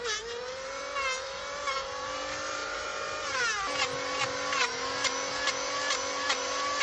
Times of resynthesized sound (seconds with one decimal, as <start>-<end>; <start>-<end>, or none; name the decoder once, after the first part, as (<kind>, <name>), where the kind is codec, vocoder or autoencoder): 0.0-2.6 (vocoder, BigVGAN v2)